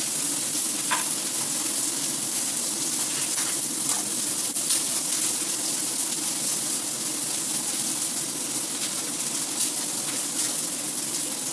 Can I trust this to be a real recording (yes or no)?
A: yes